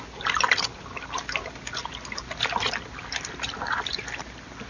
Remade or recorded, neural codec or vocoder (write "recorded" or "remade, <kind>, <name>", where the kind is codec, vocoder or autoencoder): recorded